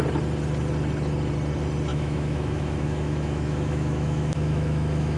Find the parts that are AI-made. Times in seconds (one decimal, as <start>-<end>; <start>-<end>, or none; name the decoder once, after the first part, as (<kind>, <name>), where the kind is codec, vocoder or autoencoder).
1.9-5.2 (autoencoder, DAC-VAE)